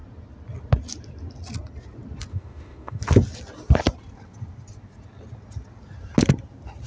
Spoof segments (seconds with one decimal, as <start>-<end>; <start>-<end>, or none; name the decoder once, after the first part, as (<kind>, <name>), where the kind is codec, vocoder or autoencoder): 2.3-3.0 (autoencoder, DAC-VAE)

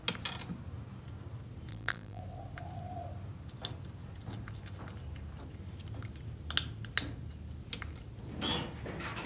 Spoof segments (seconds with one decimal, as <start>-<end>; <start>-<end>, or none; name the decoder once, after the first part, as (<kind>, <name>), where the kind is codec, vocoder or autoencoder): 1.7-2.2 (vocoder, BigVGAN v2)

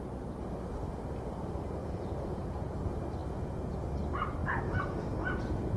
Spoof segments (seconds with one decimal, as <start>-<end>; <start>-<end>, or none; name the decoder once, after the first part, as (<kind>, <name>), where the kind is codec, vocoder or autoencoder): 1.8-2.7 (vocoder, Vocos); 3.2-3.8; 4.4-5.8

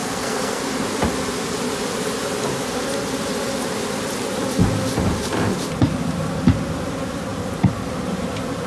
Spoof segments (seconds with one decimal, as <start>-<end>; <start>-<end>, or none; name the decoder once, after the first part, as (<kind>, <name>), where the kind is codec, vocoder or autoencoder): 0.0-0.6 (codec, SNAC)

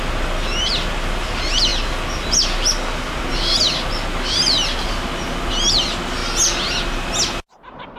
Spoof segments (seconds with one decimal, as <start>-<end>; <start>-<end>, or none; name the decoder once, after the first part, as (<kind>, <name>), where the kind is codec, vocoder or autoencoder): none

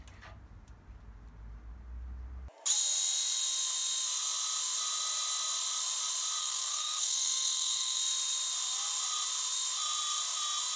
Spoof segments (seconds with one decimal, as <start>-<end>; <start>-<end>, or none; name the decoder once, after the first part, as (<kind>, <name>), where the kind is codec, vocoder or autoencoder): 6.4-8.0 (codec, SNAC)

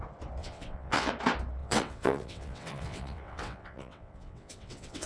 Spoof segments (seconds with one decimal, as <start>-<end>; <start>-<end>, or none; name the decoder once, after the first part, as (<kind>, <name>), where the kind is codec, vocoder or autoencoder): 0.4-1.1 (vocoder, WaveNeXt); 1.6-5.1